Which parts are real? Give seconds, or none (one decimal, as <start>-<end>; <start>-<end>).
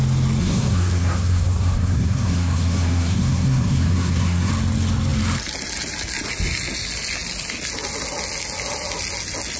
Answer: 0.0-0.4; 4.5-9.6